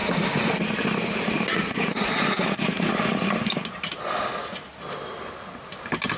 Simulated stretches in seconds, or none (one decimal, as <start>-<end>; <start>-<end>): 0.0-0.6; 1.5-3.0